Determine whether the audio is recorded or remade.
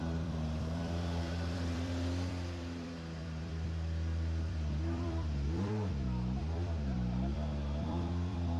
remade